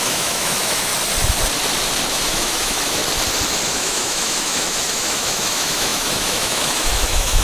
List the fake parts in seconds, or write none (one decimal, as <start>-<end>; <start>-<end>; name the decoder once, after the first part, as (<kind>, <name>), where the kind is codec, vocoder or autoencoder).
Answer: 0.0-0.9 (autoencoder, DAC-VAE); 2.1-3.0; 3.7-7.4

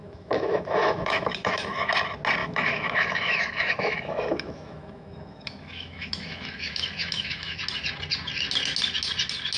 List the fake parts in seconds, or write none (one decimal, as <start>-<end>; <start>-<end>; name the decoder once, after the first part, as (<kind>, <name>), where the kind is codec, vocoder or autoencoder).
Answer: 0.0-1.9 (autoencoder, DAC-VAE); 2.4-7.6